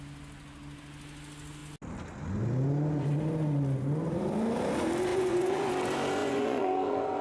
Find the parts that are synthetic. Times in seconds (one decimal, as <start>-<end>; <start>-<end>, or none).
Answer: 5.1-5.7; 6.2-7.2